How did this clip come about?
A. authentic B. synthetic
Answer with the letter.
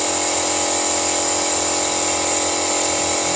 A